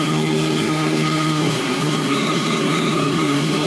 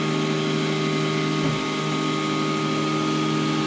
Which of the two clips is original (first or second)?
second